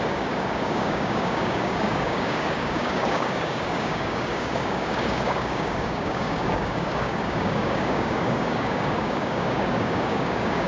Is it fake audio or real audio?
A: fake